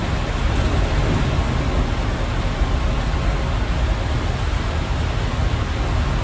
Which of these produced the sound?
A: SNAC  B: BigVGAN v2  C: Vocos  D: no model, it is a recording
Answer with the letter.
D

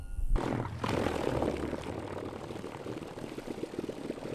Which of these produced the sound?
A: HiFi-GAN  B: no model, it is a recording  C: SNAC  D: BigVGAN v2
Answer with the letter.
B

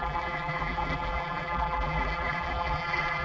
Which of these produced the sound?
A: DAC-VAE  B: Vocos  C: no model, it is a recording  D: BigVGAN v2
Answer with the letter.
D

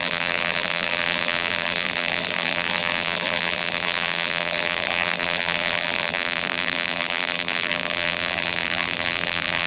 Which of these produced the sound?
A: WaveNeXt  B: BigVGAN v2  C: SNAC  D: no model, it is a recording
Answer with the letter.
B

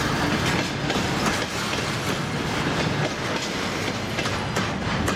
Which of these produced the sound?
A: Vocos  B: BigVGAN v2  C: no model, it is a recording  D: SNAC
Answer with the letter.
C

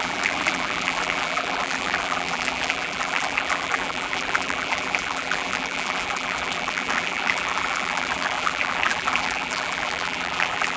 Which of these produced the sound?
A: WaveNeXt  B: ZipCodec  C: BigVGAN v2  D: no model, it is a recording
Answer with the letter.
C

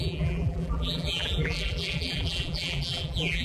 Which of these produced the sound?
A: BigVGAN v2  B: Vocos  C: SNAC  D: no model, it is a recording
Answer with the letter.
A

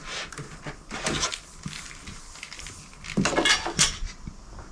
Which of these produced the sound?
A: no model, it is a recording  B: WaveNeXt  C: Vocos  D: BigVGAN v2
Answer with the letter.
A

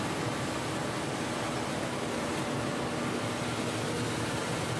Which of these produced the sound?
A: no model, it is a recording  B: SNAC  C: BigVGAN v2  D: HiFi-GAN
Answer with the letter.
A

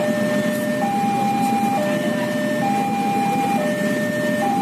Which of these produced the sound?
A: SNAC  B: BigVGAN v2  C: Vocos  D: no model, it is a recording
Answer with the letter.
D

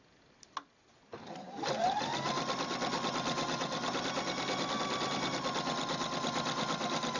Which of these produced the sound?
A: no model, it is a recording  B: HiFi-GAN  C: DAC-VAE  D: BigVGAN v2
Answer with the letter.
A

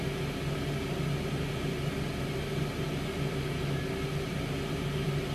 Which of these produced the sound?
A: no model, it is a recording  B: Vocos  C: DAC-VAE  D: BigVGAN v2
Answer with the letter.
A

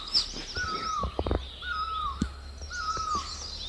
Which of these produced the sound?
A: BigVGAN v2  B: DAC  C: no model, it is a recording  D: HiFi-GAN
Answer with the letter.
C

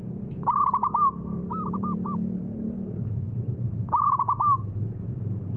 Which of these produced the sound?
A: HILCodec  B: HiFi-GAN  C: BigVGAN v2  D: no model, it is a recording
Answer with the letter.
C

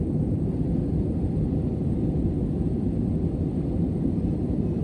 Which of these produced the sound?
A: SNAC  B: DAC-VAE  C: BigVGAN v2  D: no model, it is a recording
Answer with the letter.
C